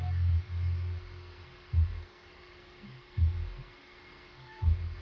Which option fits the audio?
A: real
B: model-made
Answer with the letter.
B